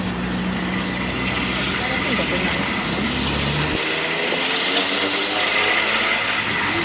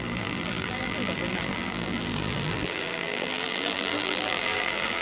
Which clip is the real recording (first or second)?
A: first